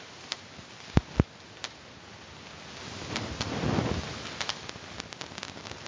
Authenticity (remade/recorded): recorded